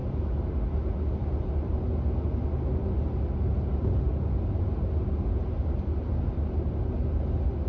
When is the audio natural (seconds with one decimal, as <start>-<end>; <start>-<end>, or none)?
0.0-7.7